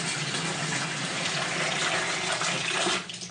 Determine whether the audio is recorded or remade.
recorded